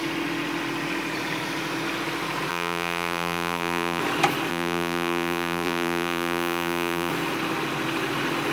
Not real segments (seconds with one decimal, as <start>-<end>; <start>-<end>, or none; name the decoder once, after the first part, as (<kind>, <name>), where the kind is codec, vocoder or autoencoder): 2.5-4.0 (vocoder, BigVGAN v2); 4.5-7.1